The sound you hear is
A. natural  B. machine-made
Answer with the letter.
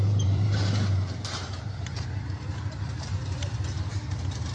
B